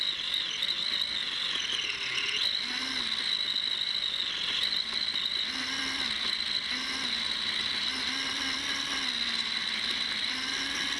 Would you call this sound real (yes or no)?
yes